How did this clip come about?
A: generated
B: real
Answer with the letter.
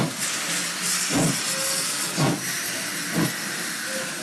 B